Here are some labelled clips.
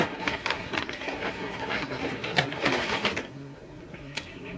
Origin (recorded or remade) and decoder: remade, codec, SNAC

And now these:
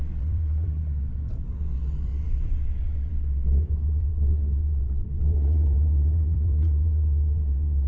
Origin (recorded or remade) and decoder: remade, vocoder, WaveNeXt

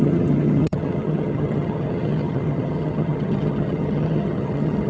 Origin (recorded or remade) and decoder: remade, vocoder, HiFi-GAN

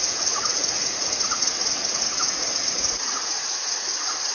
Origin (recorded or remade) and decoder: remade, vocoder, Vocos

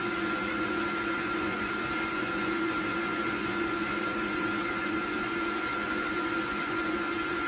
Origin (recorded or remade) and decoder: remade, vocoder, Vocos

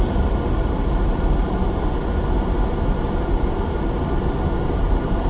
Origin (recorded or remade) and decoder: recorded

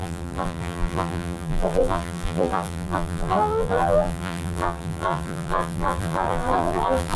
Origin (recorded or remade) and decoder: remade, vocoder, BigVGAN v2